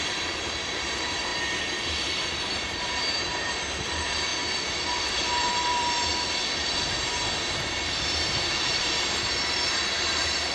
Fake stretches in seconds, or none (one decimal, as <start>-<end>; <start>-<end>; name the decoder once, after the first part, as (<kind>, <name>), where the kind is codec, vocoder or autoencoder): 0.0-1.3 (vocoder, BigVGAN v2); 2.0-4.3; 5.3-6.1; 7.4-10.5

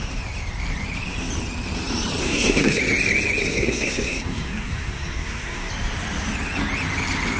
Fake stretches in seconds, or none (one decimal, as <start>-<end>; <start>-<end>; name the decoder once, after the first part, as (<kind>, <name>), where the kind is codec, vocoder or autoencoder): 2.2-2.8 (codec, SNAC); 3.4-5.7

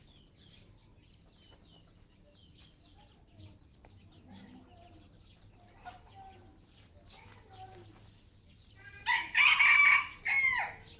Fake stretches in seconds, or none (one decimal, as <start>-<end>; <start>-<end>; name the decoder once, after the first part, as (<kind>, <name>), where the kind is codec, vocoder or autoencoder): none

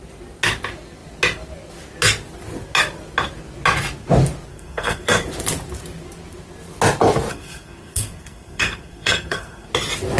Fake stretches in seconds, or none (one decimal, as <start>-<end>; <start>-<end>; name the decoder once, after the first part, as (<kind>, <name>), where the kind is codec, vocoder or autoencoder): 4.5-5.2 (codec, SNAC); 7.3-9.7

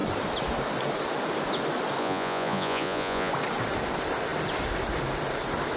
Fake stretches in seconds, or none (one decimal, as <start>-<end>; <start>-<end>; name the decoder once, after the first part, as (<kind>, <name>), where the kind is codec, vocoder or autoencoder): 2.0-3.3 (vocoder, Vocos)